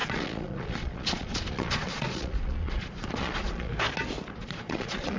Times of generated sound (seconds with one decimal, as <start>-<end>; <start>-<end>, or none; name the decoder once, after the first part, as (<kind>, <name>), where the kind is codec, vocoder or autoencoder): 0.0-3.7 (vocoder, Vocos); 4.4-5.2